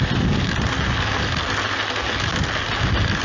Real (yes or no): yes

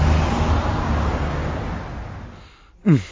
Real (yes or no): yes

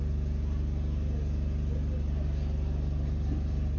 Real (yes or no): yes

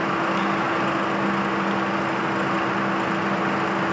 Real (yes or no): yes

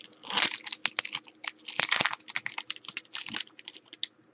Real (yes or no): yes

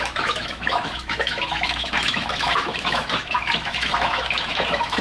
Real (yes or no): no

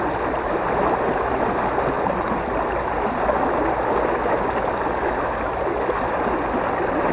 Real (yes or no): yes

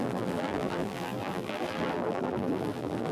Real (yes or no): no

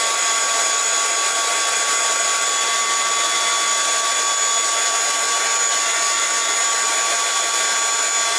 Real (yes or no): yes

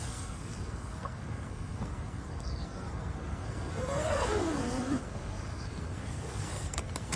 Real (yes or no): no